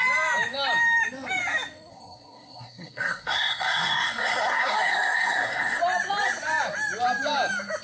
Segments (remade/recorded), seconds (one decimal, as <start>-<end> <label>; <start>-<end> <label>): 0.0-1.9 recorded; 1.9-5.8 remade; 5.8-7.8 recorded

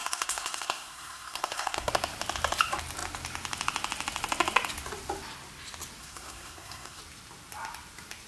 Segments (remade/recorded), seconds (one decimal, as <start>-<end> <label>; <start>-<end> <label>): 0.0-1.9 remade; 1.9-6.0 recorded; 6.0-7.0 remade; 7.0-8.3 recorded

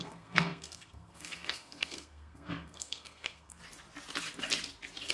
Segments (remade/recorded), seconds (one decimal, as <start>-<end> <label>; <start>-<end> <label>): 0.0-3.6 remade; 3.6-5.1 recorded

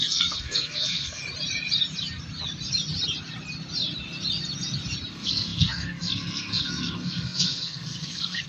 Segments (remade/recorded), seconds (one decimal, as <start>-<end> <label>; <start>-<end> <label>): 0.0-1.2 remade; 1.2-5.1 recorded; 5.1-8.5 remade

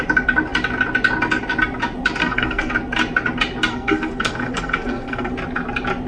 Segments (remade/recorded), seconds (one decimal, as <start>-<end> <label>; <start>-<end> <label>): 0.0-2.2 recorded; 2.2-2.7 remade; 2.7-3.7 recorded; 3.7-5.3 remade; 5.3-6.1 recorded

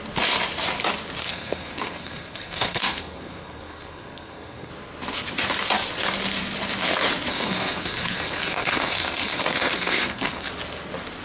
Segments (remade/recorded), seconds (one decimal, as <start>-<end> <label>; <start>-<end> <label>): 0.0-1.2 recorded; 1.2-4.7 remade; 4.7-7.3 recorded; 7.3-10.5 remade; 10.5-11.2 recorded

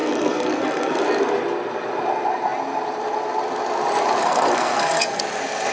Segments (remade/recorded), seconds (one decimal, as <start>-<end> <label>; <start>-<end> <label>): 0.0-1.0 remade; 1.0-4.2 recorded; 4.2-5.2 remade; 5.2-5.7 recorded